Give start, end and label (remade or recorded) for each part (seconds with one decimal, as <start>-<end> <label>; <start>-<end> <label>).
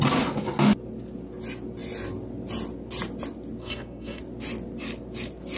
0.0-3.6 recorded; 3.6-4.2 remade; 4.2-5.6 recorded